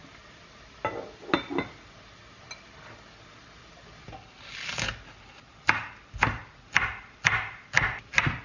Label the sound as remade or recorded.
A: recorded